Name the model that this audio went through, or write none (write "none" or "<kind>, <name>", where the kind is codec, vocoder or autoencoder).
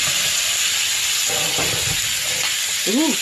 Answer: none